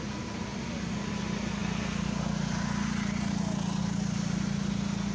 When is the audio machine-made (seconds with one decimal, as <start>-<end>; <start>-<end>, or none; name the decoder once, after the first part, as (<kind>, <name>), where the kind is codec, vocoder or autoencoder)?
none